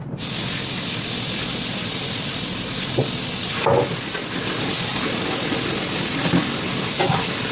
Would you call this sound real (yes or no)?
yes